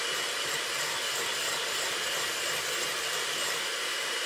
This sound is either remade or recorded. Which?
remade